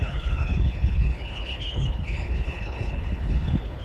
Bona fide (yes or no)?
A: no